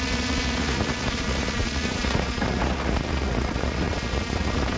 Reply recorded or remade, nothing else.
remade